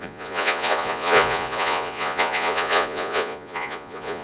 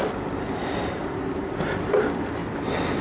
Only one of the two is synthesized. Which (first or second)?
first